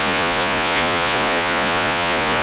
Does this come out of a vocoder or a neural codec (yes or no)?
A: yes